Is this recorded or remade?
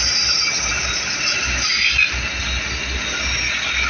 recorded